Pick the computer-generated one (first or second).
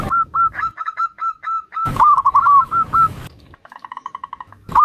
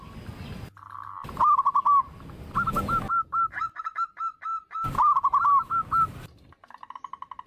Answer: first